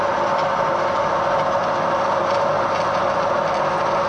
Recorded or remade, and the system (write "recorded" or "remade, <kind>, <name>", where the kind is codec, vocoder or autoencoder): recorded